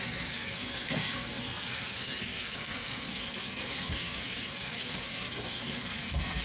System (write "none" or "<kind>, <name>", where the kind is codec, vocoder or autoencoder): codec, SNAC